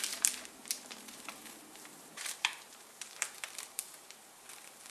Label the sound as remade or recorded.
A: remade